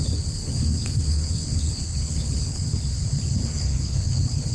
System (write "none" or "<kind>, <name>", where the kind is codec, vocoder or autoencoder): codec, HILCodec